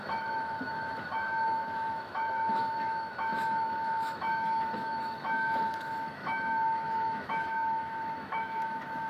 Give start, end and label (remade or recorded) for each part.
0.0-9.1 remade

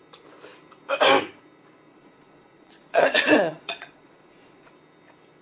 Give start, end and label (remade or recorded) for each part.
0.0-1.9 recorded; 1.9-4.7 remade; 4.7-5.4 recorded